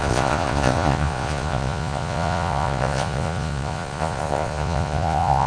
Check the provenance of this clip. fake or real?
fake